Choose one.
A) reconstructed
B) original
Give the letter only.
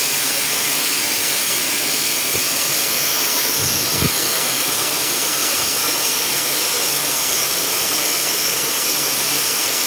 A